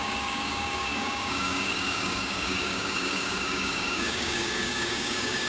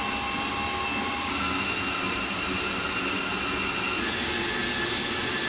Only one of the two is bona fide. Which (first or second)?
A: second